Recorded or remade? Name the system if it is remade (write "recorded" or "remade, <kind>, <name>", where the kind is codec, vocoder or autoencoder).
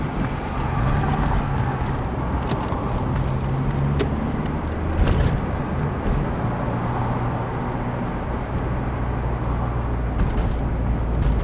recorded